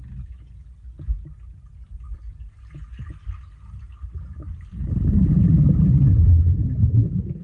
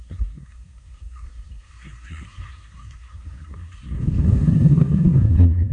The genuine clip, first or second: first